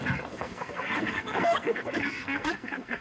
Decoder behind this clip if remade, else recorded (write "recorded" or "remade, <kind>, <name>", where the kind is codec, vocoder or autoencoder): remade, codec, SNAC